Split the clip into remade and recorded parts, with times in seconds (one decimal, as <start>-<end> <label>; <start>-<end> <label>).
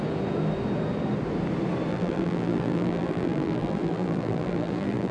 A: 0.0-1.9 recorded; 1.9-5.1 remade